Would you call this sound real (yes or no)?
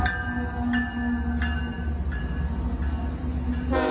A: yes